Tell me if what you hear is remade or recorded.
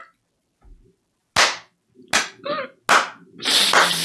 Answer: recorded